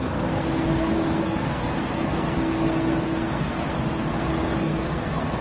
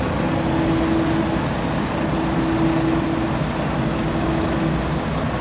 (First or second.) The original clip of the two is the second